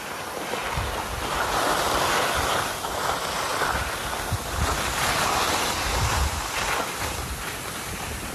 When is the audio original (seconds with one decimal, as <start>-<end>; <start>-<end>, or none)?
0.0-8.3